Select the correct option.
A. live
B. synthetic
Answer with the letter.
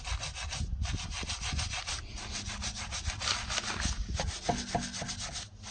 A